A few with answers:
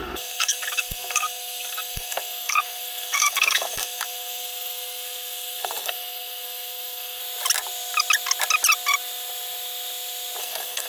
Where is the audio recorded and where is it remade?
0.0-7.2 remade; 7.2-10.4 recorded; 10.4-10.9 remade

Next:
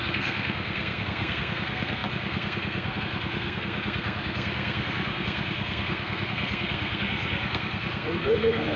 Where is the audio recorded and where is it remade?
0.0-8.8 remade

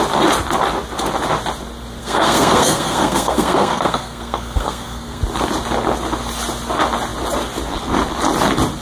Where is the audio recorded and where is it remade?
0.0-2.0 recorded; 2.0-5.2 remade; 5.2-8.8 recorded

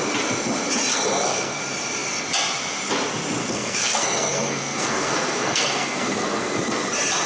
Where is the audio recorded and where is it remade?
0.0-0.9 recorded; 0.9-1.6 remade; 1.6-3.4 recorded; 3.4-6.6 remade; 6.6-7.3 recorded

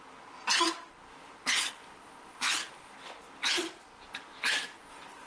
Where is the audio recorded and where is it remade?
0.0-5.3 recorded

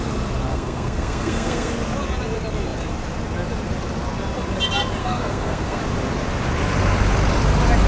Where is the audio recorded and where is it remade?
0.0-0.5 recorded; 0.5-1.7 remade; 1.7-5.0 recorded; 5.0-5.8 remade; 5.8-7.9 recorded

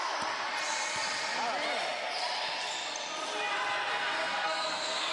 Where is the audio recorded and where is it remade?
0.0-3.9 recorded; 3.9-5.1 remade

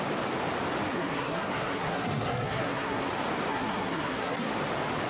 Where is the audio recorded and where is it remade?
0.0-0.9 recorded; 0.9-3.1 remade; 3.1-3.5 recorded; 3.5-4.5 remade; 4.5-5.1 recorded